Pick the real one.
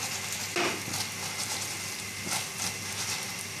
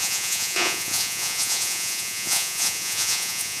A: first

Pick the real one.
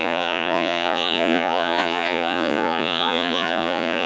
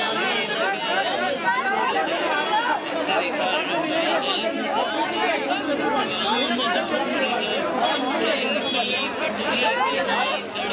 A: second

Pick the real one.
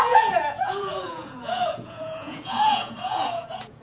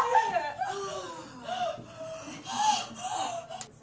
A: second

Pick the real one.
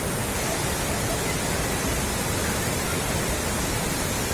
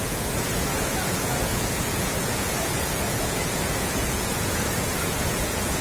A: first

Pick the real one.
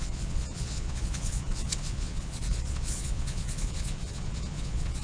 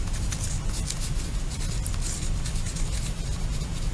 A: second